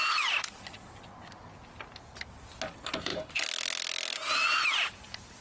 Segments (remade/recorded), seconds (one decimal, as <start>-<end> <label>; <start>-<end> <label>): 0.0-3.1 recorded; 3.1-5.4 remade

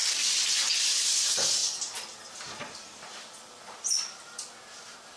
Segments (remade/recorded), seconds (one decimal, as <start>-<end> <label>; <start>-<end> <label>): 0.0-0.8 remade; 0.8-5.2 recorded

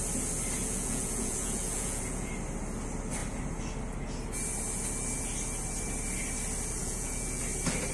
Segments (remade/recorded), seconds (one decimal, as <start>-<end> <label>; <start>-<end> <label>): 0.0-0.6 recorded; 0.6-2.3 remade; 2.3-6.8 recorded; 6.8-7.4 remade; 7.4-7.9 recorded

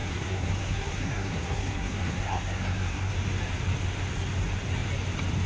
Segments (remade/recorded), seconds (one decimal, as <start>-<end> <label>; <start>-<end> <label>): 0.0-3.1 remade; 3.1-5.5 recorded

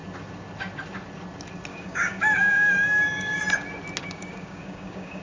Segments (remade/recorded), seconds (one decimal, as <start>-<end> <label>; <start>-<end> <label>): 0.0-1.7 recorded; 1.7-3.4 remade; 3.4-4.0 recorded; 4.0-5.2 remade

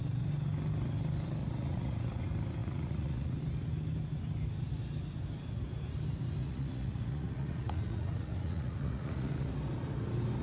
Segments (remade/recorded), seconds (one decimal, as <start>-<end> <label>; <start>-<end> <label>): 0.0-1.4 recorded; 1.4-2.2 remade; 2.2-2.6 recorded; 2.6-3.4 remade; 3.4-6.4 recorded; 6.4-9.5 remade; 9.5-10.4 recorded